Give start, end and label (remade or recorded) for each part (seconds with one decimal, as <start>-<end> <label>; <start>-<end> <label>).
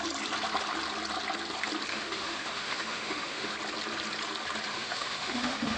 0.0-1.9 recorded; 1.9-3.5 remade; 3.5-4.7 recorded; 4.7-5.8 remade